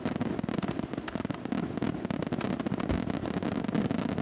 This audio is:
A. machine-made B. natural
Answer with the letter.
B